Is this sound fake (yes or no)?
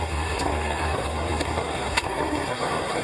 yes